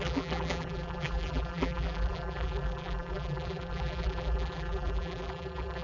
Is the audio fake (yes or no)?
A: yes